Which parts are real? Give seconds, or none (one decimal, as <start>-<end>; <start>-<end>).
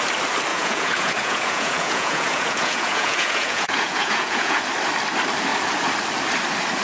0.0-0.5; 4.6-6.8